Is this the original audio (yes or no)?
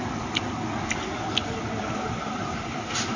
yes